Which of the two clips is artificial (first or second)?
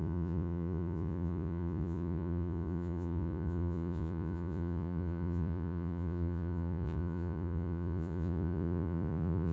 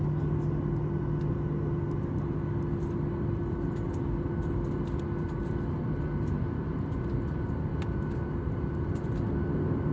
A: first